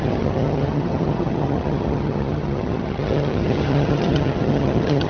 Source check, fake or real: fake